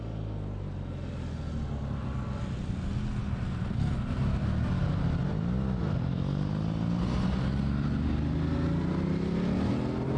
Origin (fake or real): real